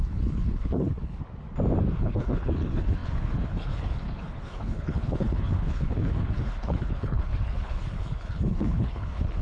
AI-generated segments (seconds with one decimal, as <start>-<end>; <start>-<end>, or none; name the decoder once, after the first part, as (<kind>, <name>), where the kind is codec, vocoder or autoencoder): 0.0-1.2 (codec, HILCodec); 2.0-9.4